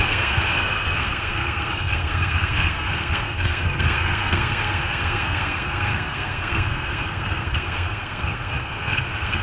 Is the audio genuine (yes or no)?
no